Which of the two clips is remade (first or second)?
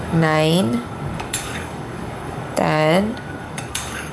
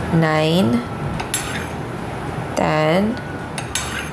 first